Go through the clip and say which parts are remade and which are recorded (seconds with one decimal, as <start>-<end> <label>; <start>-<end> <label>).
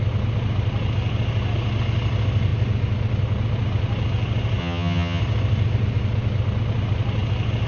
0.0-4.6 recorded; 4.6-5.2 remade; 5.2-7.7 recorded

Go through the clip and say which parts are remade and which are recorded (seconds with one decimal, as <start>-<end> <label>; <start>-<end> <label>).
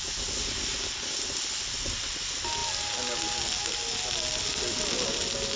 0.0-5.6 recorded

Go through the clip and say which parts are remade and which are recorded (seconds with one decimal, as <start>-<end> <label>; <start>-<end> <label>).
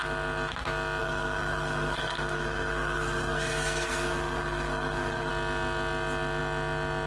0.0-1.0 recorded; 1.0-5.3 remade; 5.3-7.1 recorded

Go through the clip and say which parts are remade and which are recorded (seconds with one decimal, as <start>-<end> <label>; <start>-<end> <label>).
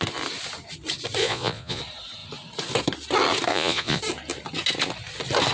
0.0-1.2 recorded; 1.2-1.8 remade; 1.8-3.5 recorded; 3.5-4.0 remade; 4.0-5.5 recorded